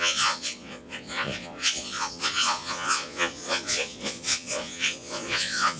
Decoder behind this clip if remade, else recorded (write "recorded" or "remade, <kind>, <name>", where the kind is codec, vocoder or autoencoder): remade, vocoder, Vocos